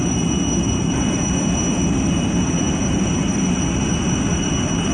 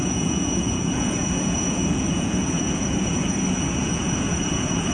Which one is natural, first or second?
first